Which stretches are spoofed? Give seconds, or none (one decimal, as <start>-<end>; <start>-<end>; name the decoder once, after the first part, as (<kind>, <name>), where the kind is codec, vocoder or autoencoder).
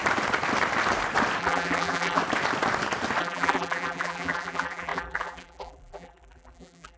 1.4-2.2 (vocoder, BigVGAN v2); 3.2-7.0